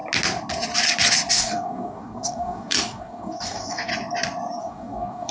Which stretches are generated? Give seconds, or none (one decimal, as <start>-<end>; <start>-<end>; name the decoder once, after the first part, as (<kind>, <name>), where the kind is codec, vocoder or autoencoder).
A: 1.3-3.9 (codec, DAC); 4.6-5.3